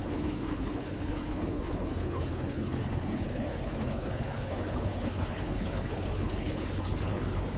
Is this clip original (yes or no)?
no